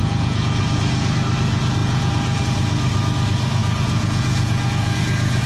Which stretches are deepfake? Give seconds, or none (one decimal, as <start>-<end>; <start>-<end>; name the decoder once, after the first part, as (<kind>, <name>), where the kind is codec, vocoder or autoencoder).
0.0-0.8 (vocoder, Vocos); 1.8-2.4; 3.6-5.5